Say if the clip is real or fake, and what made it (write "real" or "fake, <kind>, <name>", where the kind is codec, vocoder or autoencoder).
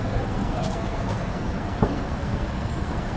fake, codec, SNAC